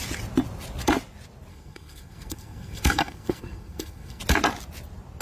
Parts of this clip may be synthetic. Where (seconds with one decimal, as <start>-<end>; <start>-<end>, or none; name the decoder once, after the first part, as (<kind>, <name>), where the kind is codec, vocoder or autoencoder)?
1.5-4.2 (codec, SNAC)